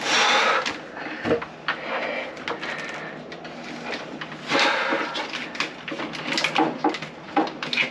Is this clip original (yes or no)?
yes